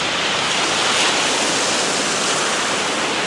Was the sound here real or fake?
real